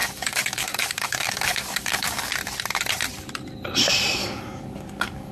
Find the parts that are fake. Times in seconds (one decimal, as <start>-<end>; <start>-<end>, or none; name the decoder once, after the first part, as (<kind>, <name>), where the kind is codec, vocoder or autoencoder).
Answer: 0.0-2.3 (codec, DAC); 4.2-5.3